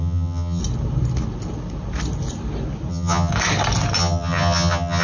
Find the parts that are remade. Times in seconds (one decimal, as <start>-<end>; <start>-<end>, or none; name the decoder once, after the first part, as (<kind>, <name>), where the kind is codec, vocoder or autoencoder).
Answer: 0.0-0.6 (vocoder, HiFi-GAN); 2.9-3.3; 4.0-5.0